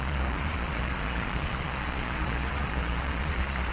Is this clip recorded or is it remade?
remade